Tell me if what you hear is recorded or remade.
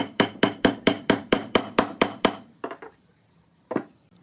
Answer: remade